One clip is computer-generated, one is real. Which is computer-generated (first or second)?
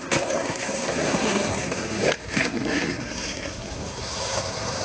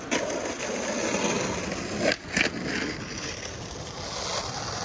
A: first